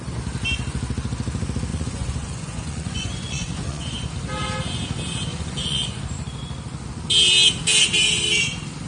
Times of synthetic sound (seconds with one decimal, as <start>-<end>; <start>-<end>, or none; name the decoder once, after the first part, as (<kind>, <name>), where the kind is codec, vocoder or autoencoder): 1.7-4.1 (vocoder, Vocos); 5.3-6.0